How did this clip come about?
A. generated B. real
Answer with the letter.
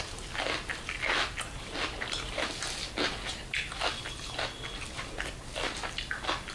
B